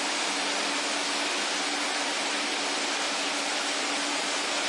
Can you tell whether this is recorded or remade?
recorded